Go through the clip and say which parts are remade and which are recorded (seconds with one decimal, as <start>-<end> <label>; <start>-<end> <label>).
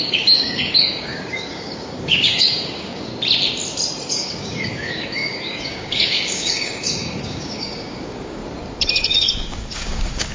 0.0-3.1 remade; 3.1-4.1 recorded; 4.1-8.4 remade; 8.4-8.9 recorded; 8.9-10.3 remade